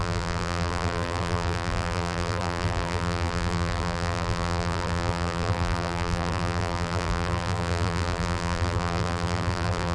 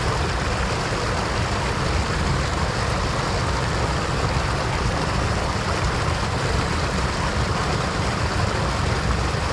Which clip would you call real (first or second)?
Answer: second